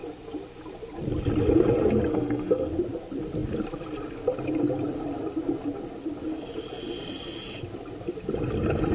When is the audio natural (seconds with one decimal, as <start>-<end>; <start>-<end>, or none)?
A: 0.0-2.1; 2.7-8.9